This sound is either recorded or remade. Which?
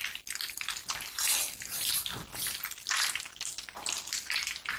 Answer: recorded